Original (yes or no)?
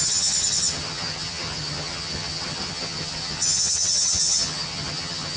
no